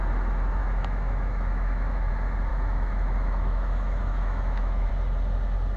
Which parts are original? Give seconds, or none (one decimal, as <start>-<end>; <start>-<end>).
0.0-0.6; 2.1-2.5; 4.9-5.8